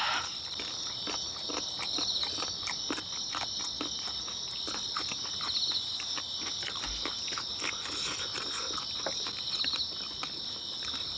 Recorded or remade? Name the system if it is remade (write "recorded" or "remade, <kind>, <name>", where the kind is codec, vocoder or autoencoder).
recorded